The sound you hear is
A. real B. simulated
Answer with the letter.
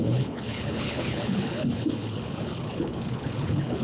B